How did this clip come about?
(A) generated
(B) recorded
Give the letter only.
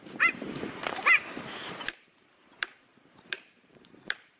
A